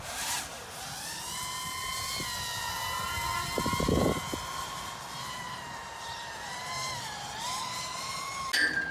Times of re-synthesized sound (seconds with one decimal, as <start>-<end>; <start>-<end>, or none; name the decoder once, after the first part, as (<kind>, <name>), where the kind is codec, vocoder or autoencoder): 5.8-7.6 (vocoder, BigVGAN v2)